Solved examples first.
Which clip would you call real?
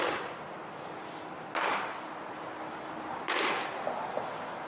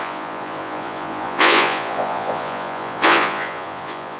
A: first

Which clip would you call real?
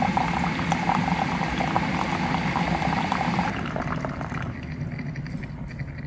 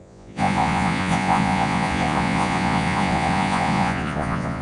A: first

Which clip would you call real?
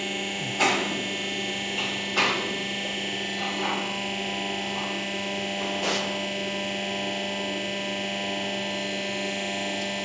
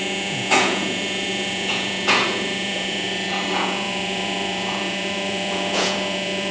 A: first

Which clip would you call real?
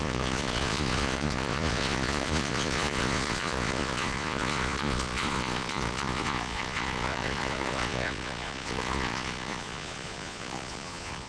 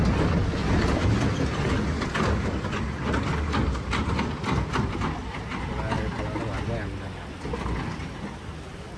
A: second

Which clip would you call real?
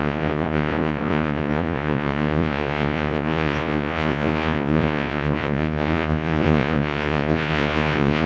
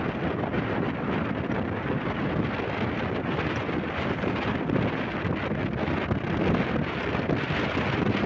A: second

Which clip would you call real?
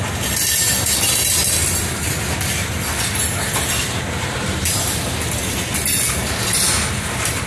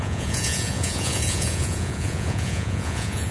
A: first